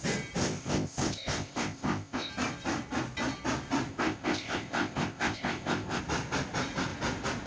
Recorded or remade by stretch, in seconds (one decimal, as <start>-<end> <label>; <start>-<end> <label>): 0.0-0.4 recorded; 0.4-2.3 remade; 2.3-3.9 recorded; 3.9-6.0 remade; 6.0-7.5 recorded